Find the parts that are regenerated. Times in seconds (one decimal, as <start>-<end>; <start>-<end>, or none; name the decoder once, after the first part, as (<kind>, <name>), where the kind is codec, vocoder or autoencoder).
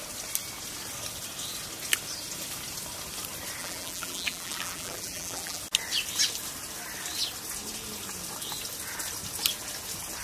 3.6-5.6 (vocoder, BigVGAN v2)